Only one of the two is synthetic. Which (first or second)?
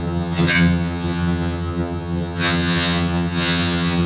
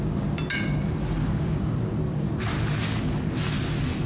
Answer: first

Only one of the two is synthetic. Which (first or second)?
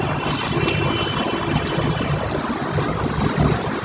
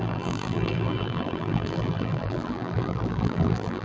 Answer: second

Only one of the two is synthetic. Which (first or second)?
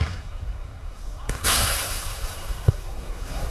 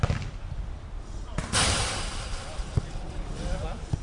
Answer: first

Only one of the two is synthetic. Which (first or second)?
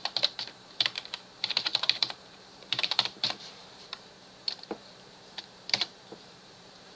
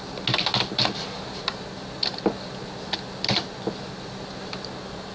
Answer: first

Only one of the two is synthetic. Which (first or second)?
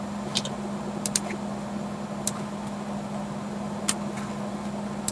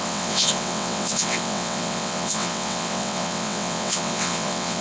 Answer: second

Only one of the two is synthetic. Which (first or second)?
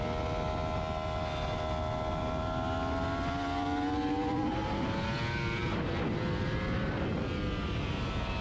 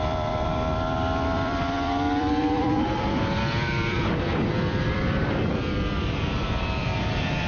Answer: second